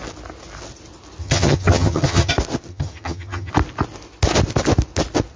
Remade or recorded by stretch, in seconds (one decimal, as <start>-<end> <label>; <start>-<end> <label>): 0.0-1.2 recorded; 1.2-2.3 remade; 2.3-2.7 recorded; 2.7-3.5 remade; 3.5-5.4 recorded